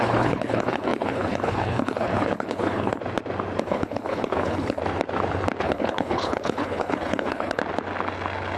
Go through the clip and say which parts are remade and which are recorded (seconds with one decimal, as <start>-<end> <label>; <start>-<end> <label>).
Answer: 0.0-3.0 remade; 3.0-3.6 recorded; 3.6-4.8 remade; 4.8-5.6 recorded; 5.6-7.6 remade; 7.6-8.6 recorded